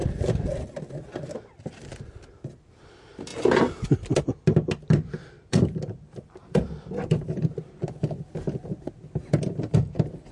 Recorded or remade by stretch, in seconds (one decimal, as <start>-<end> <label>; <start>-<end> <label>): 0.0-5.2 recorded; 5.2-6.6 remade; 6.6-10.3 recorded